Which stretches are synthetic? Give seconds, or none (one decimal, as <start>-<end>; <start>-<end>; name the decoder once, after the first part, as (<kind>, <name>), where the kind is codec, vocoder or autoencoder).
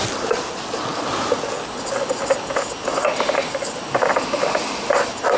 none